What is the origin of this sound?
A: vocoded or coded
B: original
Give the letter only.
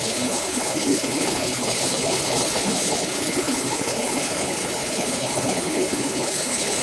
A